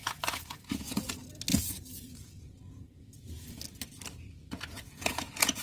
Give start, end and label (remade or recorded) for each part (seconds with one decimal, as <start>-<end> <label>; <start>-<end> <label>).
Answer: 0.0-1.1 remade; 1.1-1.5 recorded; 1.5-3.0 remade; 3.0-4.4 recorded; 4.4-5.6 remade